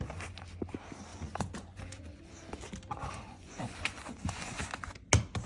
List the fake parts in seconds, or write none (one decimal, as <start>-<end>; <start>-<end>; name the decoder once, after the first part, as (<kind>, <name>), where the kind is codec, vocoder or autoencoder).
1.1-2.2 (vocoder, Vocos); 3.0-4.6